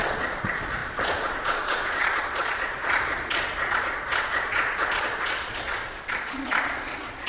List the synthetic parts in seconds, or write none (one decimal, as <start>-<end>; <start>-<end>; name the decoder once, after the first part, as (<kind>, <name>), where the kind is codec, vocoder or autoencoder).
0.0-7.3 (vocoder, Vocos)